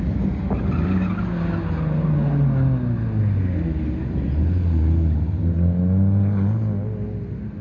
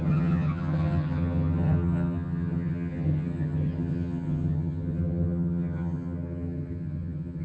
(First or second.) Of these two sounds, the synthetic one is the second